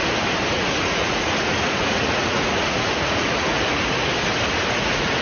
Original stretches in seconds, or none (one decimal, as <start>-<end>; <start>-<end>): 0.0-0.5; 4.1-4.7